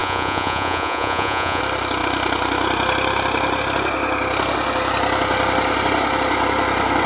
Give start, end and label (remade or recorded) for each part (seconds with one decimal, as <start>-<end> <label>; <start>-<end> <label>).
0.0-1.6 remade; 1.6-7.1 recorded